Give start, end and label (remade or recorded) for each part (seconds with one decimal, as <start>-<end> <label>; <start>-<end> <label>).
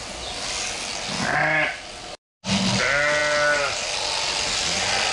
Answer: 0.0-5.1 recorded